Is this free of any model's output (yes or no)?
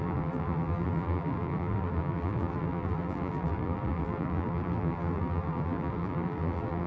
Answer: no